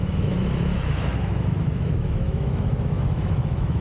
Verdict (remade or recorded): remade